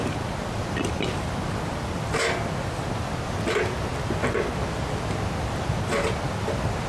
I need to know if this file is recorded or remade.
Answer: recorded